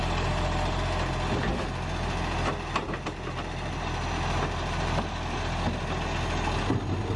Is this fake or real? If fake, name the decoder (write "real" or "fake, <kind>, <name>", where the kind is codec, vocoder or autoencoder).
real